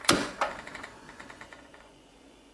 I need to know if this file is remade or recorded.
remade